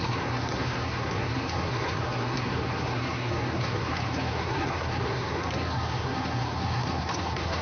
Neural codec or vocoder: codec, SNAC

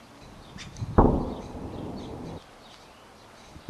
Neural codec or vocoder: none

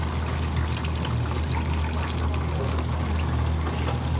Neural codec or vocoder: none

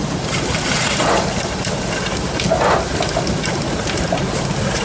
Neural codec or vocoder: none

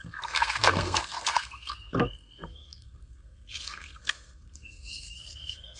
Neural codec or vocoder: codec, SNAC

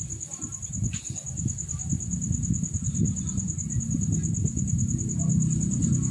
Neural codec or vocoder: none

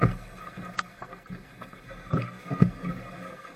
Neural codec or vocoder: codec, SNAC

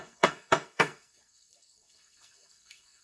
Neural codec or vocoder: codec, SNAC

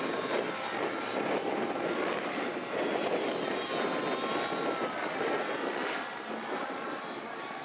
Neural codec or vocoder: none